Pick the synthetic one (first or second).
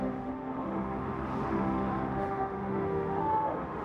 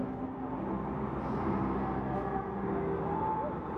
first